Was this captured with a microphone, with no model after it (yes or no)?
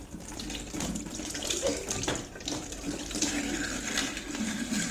yes